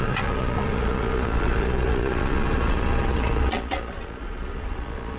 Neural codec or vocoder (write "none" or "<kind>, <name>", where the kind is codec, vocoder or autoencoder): vocoder, Vocos